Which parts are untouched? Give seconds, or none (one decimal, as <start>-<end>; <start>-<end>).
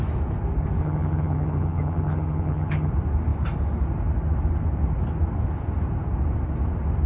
0.0-0.8; 2.9-7.1